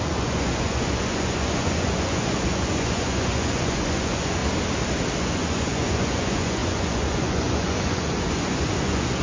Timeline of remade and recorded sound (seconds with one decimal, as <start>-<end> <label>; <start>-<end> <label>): 0.0-4.4 remade; 4.4-5.2 recorded; 5.2-9.2 remade